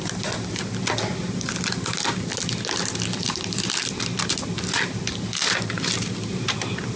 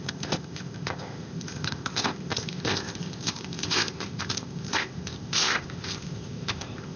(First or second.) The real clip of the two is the first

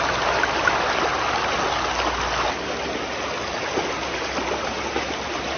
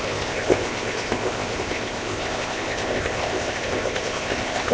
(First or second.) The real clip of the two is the first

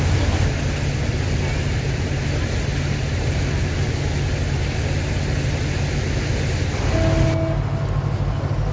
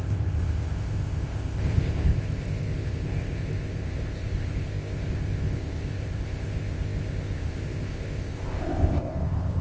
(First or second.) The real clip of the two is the first